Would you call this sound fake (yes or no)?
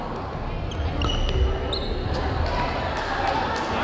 no